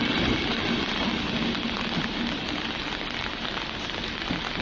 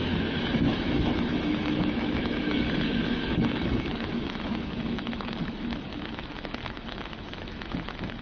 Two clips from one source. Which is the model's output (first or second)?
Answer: second